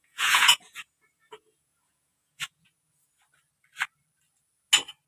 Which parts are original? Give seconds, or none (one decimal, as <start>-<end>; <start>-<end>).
3.1-5.1